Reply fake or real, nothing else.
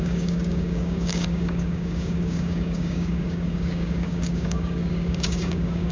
fake